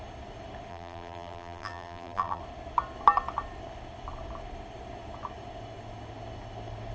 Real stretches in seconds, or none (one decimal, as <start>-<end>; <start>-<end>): 0.0-0.7; 2.4-6.9